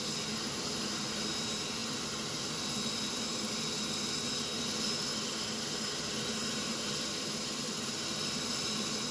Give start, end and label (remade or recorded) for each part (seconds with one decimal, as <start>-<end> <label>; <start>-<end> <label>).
0.0-9.1 recorded